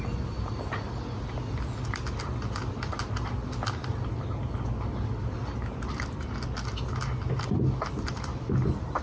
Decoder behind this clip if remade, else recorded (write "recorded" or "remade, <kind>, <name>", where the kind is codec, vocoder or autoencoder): recorded